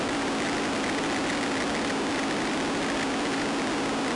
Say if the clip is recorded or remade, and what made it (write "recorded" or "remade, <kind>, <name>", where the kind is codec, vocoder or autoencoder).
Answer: recorded